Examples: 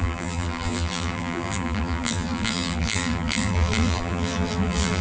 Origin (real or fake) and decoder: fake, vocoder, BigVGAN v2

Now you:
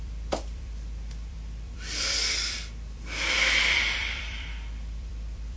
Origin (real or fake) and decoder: fake, vocoder, BigVGAN v2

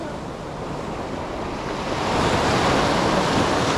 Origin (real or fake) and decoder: real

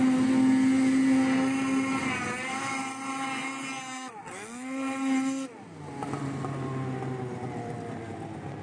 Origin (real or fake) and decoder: real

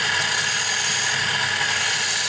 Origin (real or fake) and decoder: real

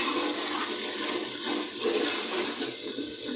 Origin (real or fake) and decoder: real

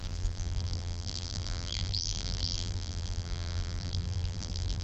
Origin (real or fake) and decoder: fake, vocoder, BigVGAN v2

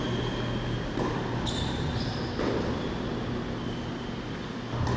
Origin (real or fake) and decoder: real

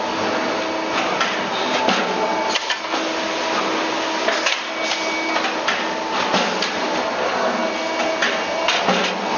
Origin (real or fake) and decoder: real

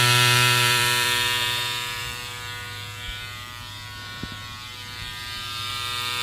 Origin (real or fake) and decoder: fake, vocoder, BigVGAN v2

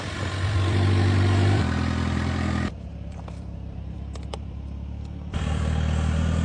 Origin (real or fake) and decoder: fake, vocoder, BigVGAN v2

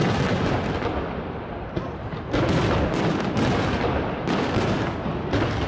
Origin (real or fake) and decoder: real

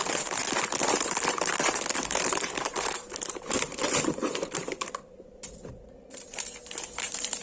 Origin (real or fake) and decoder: fake, vocoder, BigVGAN v2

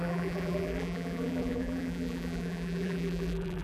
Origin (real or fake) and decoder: fake, vocoder, BigVGAN v2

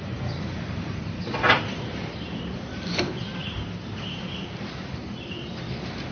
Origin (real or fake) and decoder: fake, vocoder, BigVGAN v2